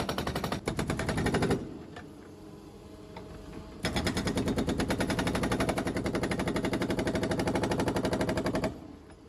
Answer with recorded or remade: recorded